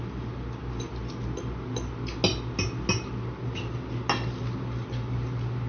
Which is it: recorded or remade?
recorded